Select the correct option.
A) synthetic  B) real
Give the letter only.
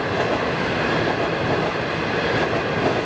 B